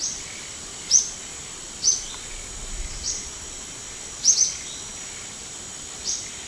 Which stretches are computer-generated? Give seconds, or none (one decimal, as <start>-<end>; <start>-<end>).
none